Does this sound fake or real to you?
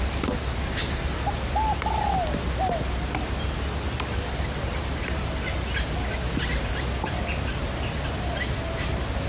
real